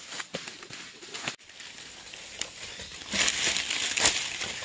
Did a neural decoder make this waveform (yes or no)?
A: no